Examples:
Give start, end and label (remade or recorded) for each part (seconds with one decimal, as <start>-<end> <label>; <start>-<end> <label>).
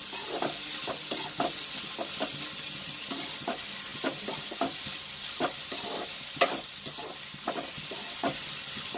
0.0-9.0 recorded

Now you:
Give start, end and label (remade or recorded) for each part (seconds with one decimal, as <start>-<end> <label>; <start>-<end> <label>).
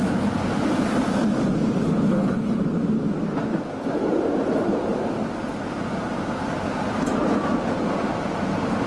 0.0-1.8 recorded; 1.8-2.6 remade; 2.6-8.9 recorded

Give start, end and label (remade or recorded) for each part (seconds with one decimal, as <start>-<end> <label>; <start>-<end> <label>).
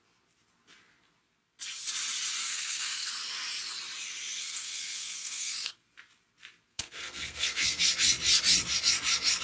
0.0-2.4 recorded; 2.4-3.1 remade; 3.1-4.4 recorded; 4.4-5.7 remade; 5.7-6.7 recorded; 6.7-7.8 remade; 7.8-9.4 recorded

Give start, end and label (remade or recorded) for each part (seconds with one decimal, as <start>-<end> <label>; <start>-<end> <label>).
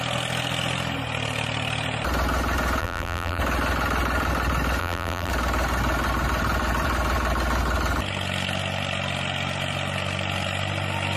0.0-2.8 recorded; 2.8-3.4 remade; 3.4-4.8 recorded; 4.8-5.3 remade; 5.3-11.2 recorded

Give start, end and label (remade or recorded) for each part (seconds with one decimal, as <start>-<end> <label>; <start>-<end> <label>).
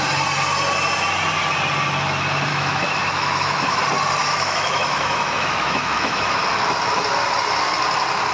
0.0-2.5 recorded; 2.5-3.8 remade; 3.8-4.2 recorded; 4.2-6.4 remade; 6.4-8.3 recorded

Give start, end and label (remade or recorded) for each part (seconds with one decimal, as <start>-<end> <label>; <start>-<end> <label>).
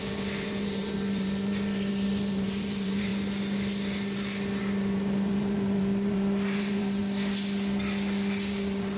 0.0-3.1 remade; 3.1-4.6 recorded; 4.6-7.0 remade; 7.0-8.5 recorded; 8.5-9.0 remade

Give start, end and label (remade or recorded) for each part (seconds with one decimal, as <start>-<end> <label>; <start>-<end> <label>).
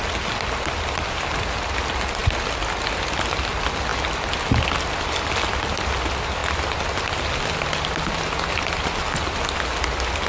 0.0-10.3 recorded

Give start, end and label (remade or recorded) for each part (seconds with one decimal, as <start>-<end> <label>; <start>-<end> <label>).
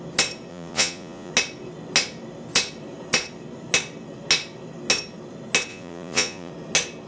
0.0-0.5 recorded; 0.5-1.3 remade; 1.3-5.7 recorded; 5.7-6.5 remade; 6.5-7.1 recorded